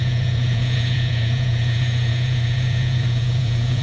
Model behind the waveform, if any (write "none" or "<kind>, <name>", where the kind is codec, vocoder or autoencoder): vocoder, Vocos